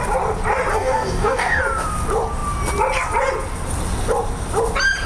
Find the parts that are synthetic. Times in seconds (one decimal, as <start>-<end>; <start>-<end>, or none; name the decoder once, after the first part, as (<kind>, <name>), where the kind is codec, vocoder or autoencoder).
0.7-1.6 (codec, DAC)